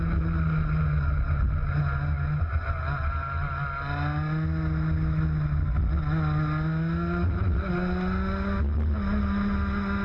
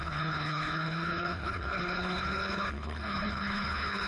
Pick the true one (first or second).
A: first